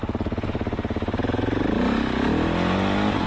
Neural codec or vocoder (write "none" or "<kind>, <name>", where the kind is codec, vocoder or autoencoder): none